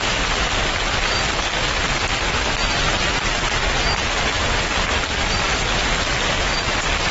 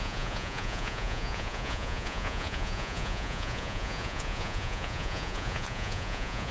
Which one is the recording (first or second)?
first